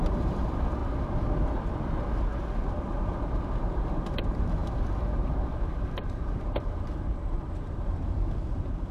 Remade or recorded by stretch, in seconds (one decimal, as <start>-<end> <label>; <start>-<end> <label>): 0.0-0.8 remade; 0.8-3.6 recorded; 3.6-8.9 remade

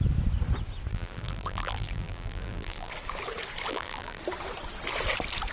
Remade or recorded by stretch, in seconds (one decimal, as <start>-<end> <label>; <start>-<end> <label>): 0.0-0.9 recorded; 0.9-2.9 remade; 2.9-3.7 recorded; 3.7-4.2 remade; 4.2-5.5 recorded

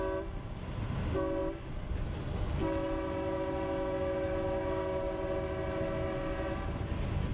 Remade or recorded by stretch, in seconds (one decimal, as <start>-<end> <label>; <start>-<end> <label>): 0.0-7.3 recorded

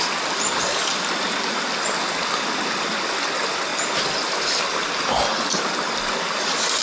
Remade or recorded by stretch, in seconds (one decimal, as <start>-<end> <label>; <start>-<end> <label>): 0.0-6.8 recorded

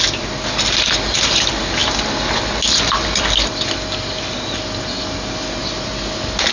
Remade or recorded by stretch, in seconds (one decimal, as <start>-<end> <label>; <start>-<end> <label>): 0.0-6.5 recorded

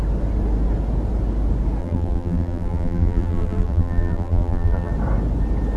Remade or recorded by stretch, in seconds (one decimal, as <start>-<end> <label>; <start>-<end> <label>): 0.0-1.8 recorded; 1.8-4.9 remade; 4.9-5.8 recorded